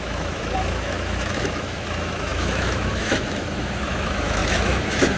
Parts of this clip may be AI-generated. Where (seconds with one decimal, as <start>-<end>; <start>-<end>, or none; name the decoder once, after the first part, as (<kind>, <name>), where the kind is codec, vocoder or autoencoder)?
0.0-5.2 (autoencoder, DAC-VAE)